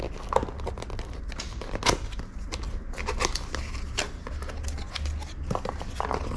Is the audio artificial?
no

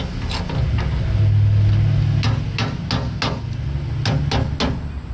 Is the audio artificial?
no